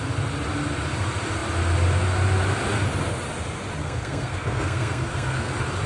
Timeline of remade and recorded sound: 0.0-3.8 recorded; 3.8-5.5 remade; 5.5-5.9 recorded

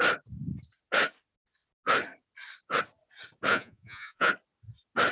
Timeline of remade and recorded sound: 0.0-3.5 recorded; 3.5-4.3 remade; 4.3-5.1 recorded

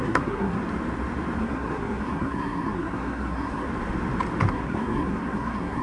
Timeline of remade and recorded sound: 0.0-0.6 remade; 0.6-1.4 recorded; 1.4-3.7 remade; 3.7-4.5 recorded; 4.5-5.8 remade

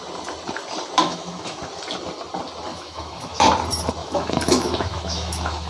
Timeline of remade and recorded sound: 0.0-1.0 recorded; 1.0-1.6 remade; 1.6-2.7 recorded; 2.7-3.5 remade; 3.5-4.0 recorded; 4.0-5.7 remade

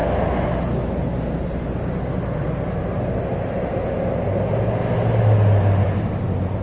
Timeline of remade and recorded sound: 0.0-6.6 recorded